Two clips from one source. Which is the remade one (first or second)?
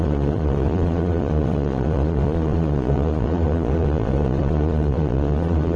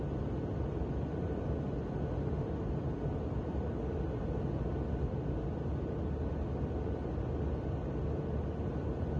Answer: first